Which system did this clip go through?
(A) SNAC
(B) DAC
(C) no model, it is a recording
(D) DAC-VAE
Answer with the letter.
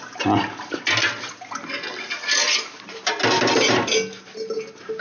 C